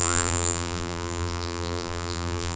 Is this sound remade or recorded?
remade